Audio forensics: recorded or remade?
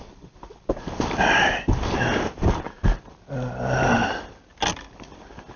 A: recorded